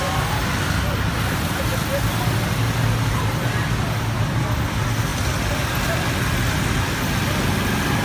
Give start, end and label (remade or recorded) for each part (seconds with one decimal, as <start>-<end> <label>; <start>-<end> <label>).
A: 0.0-8.0 recorded